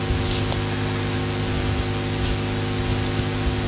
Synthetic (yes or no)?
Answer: no